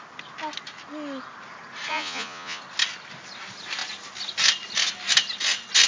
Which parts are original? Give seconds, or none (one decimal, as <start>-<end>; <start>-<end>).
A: 0.0-1.9; 2.6-5.9